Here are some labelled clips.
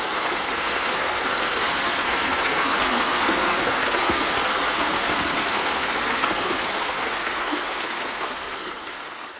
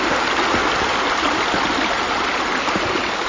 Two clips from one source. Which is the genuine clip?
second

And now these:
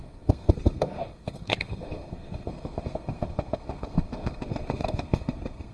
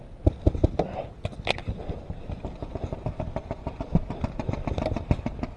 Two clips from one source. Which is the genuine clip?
second